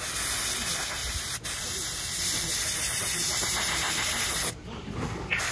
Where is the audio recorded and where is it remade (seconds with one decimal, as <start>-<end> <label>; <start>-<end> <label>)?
0.0-1.0 recorded; 1.0-4.3 remade; 4.3-5.5 recorded